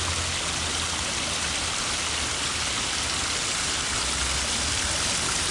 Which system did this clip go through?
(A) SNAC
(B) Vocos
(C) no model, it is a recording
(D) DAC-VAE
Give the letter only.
C